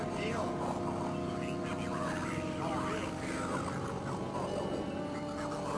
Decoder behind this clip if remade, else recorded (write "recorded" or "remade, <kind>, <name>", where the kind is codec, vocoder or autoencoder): recorded